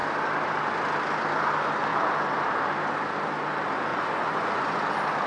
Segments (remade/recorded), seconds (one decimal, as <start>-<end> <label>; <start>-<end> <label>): 0.0-3.9 recorded; 3.9-4.8 remade; 4.8-5.3 recorded